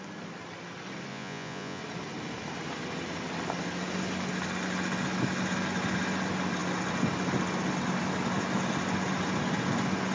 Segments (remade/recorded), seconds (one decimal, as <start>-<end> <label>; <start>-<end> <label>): 0.0-1.1 recorded; 1.1-1.8 remade; 1.8-10.1 recorded